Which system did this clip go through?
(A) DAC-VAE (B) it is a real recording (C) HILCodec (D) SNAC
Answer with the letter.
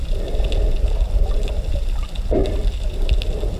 B